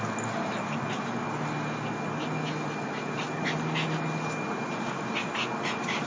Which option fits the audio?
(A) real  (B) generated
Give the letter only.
A